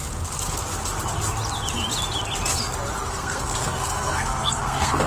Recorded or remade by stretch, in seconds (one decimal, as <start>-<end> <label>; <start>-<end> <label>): 0.0-3.1 recorded; 3.1-5.1 remade